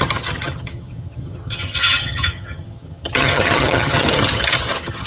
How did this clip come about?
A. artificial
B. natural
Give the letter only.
A